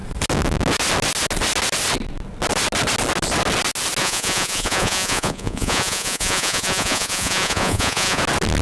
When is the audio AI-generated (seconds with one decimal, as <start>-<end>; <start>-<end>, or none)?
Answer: 4.0-8.2